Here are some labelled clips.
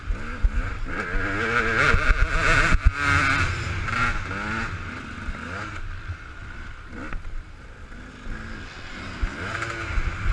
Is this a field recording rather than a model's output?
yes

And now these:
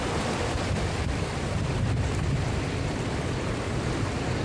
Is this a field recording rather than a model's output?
no